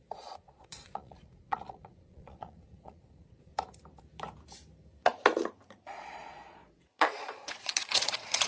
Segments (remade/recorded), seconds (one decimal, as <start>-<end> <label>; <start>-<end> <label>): 0.0-3.5 remade; 3.5-5.7 recorded; 5.7-8.5 remade